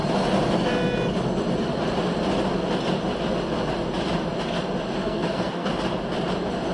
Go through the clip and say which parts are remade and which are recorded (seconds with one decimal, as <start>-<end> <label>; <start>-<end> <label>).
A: 0.0-5.0 recorded; 5.0-5.7 remade; 5.7-6.7 recorded

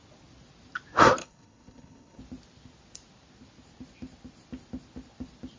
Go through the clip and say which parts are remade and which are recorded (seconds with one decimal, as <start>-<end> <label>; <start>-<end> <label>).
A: 0.0-1.2 recorded; 1.2-2.2 remade; 2.2-5.6 recorded

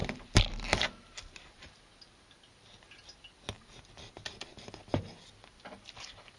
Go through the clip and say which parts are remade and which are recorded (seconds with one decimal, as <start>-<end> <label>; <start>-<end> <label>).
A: 0.0-6.4 recorded